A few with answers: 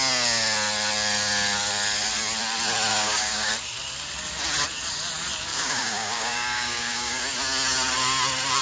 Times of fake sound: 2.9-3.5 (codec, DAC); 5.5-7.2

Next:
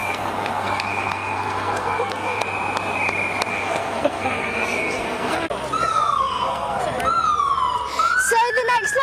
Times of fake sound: 0.0-2.4 (codec, SNAC); 3.5-5.5; 5.9-6.8

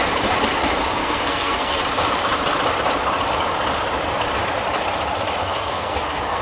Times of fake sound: 1.0-1.8 (codec, SNAC); 5.4-6.4

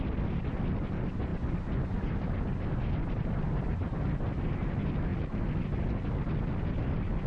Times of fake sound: none

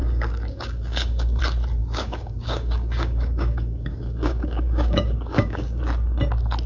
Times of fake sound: 0.0-1.4 (codec, DAC); 1.8-5.8

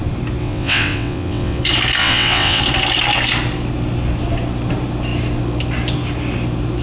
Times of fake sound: 0.4-1.6 (vocoder, WaveNeXt); 2.0-2.6

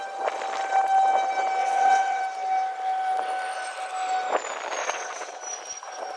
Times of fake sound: 1.6-2.2 (vocoder, WaveNeXt); 4.8-5.4

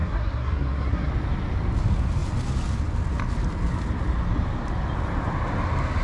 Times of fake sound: 0.0-1.1 (codec, SNAC)